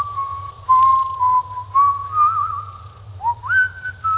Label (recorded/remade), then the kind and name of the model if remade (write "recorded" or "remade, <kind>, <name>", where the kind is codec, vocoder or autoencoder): recorded